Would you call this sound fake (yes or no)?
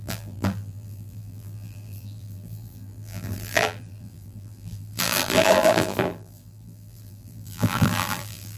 yes